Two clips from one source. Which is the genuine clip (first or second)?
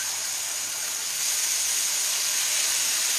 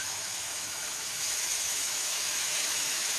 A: first